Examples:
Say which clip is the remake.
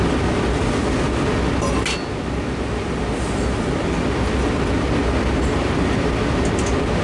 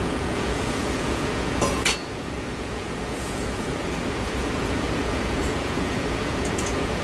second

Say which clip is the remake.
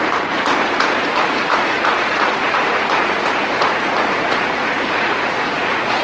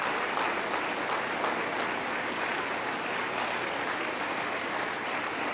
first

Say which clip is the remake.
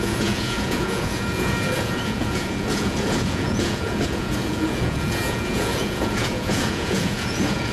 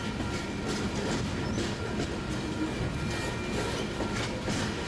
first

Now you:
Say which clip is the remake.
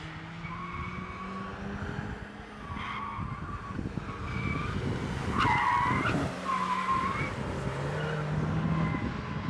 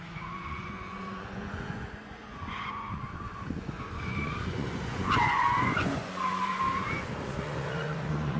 second